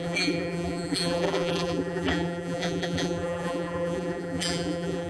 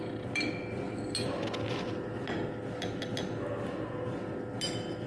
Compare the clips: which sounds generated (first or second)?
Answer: first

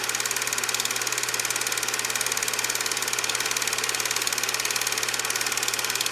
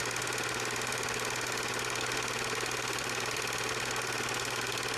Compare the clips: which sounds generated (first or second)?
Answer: second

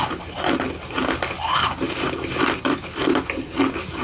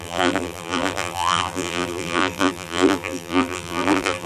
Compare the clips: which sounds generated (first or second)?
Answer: second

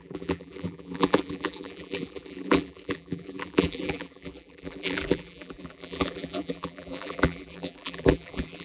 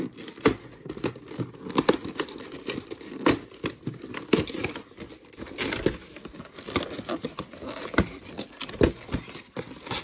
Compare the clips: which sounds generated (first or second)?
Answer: first